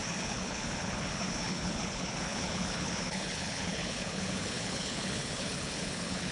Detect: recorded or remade remade